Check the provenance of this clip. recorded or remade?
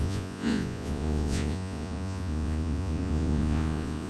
remade